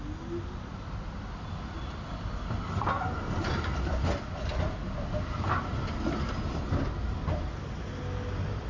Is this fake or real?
real